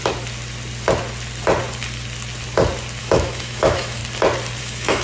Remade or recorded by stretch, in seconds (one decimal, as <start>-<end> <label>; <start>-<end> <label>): 0.0-3.0 recorded; 3.0-4.0 remade; 4.0-4.6 recorded; 4.6-5.0 remade